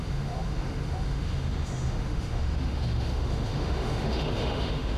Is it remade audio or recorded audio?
remade